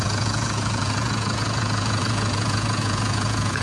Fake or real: fake